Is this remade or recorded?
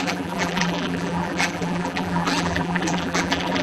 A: remade